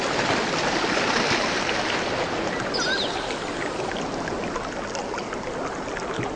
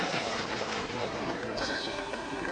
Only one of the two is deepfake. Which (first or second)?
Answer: second